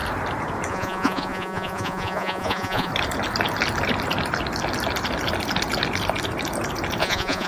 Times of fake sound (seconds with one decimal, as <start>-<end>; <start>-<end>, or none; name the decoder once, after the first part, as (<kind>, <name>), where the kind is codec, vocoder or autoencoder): 0.7-2.9 (vocoder, Vocos); 7.0-7.5